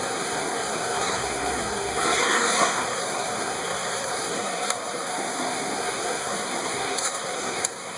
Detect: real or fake fake